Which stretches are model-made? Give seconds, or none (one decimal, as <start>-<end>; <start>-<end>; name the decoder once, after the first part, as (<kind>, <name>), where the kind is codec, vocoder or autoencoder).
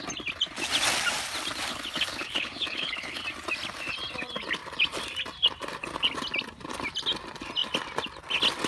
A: 1.7-3.2 (codec, HILCodec)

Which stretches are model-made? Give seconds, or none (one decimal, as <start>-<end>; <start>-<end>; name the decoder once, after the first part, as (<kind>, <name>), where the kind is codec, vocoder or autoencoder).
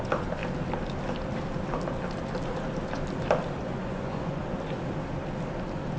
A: 3.6-4.4 (vocoder, Vocos)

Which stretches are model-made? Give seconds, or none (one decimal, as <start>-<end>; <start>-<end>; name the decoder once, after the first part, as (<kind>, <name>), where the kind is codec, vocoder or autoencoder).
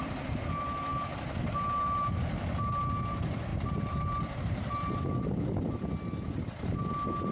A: 3.5-5.2 (vocoder, BigVGAN v2)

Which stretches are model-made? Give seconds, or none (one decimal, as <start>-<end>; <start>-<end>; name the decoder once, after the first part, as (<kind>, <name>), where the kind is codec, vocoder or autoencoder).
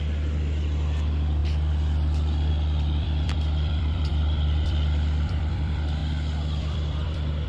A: 0.0-1.4 (vocoder, BigVGAN v2); 2.5-6.0; 6.6-7.5